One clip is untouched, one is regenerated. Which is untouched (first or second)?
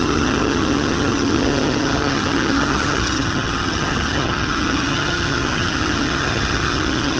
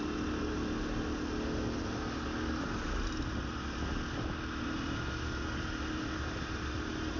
second